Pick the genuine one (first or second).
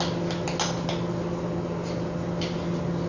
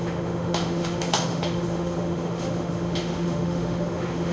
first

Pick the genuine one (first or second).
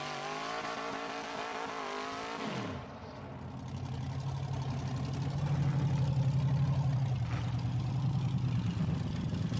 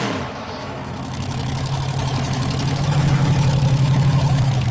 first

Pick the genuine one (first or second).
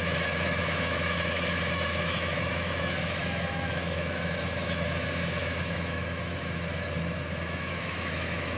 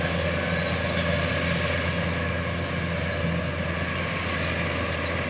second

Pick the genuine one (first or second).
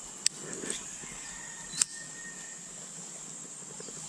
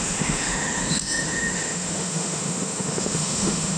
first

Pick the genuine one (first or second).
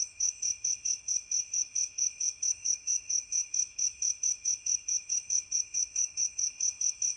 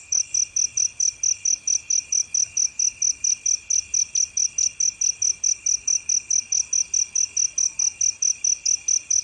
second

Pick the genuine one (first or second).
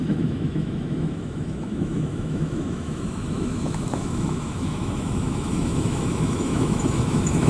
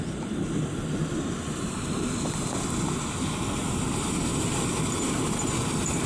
second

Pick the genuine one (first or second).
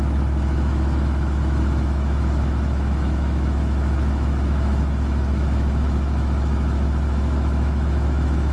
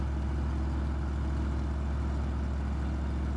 second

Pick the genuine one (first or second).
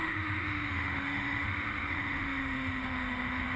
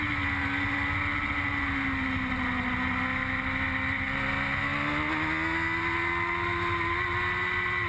second